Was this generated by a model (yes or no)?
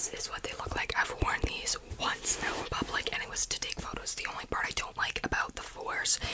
yes